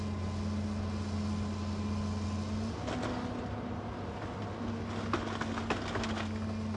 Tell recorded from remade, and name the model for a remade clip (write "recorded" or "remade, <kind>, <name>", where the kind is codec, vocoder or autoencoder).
recorded